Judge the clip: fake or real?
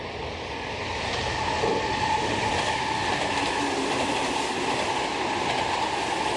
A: real